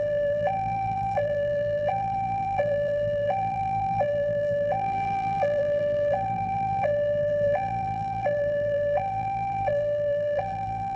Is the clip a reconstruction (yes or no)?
yes